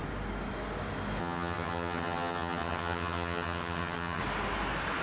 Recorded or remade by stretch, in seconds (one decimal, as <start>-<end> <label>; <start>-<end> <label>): 0.0-1.2 recorded; 1.2-4.2 remade; 4.2-5.0 recorded